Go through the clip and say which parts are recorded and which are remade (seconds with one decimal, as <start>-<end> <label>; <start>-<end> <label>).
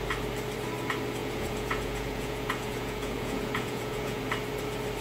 0.0-1.2 recorded; 1.2-4.2 remade; 4.2-5.0 recorded